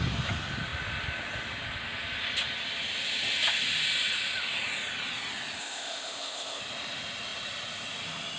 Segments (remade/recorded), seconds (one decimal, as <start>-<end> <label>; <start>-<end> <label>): 0.0-5.6 recorded; 5.6-6.6 remade; 6.6-8.4 recorded